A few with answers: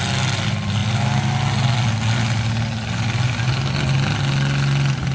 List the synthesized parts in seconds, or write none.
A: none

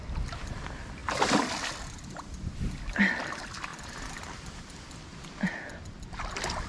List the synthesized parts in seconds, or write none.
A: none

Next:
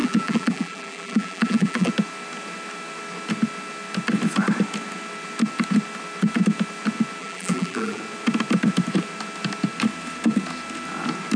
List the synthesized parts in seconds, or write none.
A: 0.0-1.9 (vocoder, BigVGAN v2); 7.2-8.0